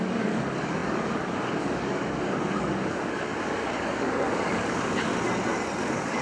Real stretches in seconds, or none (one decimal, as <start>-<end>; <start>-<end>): 5.1-5.8